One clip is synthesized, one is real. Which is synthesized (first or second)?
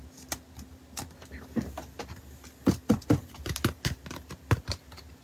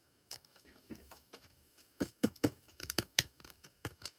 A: second